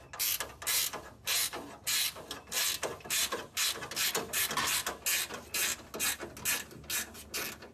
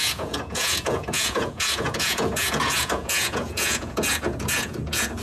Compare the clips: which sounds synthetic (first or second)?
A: second